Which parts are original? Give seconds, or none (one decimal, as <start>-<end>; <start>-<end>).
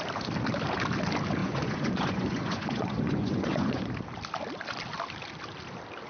0.0-1.4; 3.9-6.1